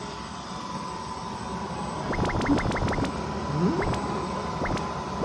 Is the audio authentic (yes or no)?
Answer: no